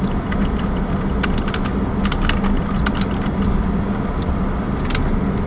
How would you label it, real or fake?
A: real